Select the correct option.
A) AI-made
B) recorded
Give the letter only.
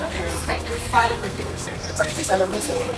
A